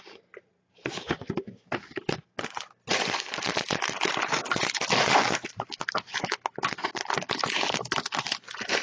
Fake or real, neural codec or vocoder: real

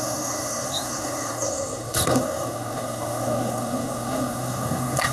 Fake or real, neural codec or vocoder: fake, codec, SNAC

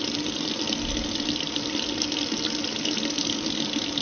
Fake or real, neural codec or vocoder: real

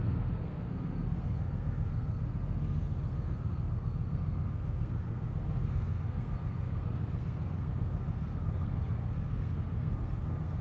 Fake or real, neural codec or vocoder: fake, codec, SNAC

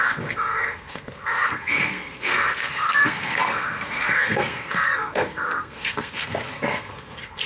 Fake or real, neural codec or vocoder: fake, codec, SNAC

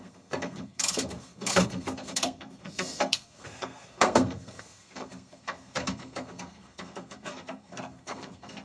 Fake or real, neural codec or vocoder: fake, codec, SNAC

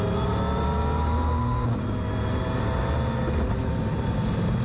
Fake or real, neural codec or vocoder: real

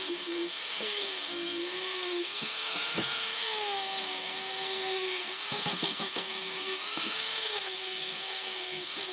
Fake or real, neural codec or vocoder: fake, codec, SNAC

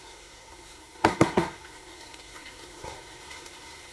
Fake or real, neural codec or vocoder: fake, codec, SNAC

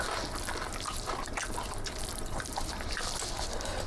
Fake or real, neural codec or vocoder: real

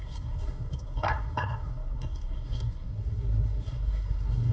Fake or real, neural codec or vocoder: fake, codec, SNAC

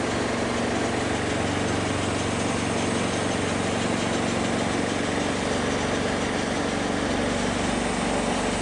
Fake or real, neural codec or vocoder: real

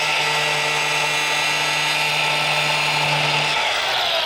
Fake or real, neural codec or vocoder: real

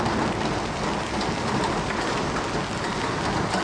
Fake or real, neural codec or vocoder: real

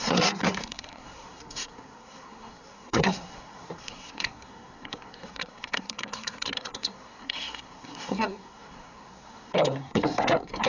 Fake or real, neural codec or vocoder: fake, codec, SNAC